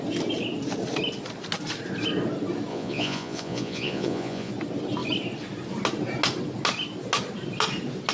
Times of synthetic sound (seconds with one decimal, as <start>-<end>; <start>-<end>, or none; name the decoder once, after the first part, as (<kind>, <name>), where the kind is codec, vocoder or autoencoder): 2.7-4.5 (vocoder, Vocos)